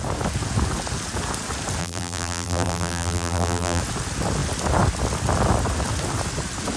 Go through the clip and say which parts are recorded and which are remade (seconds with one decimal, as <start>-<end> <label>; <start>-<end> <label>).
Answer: 0.0-1.8 recorded; 1.8-3.8 remade; 3.8-6.8 recorded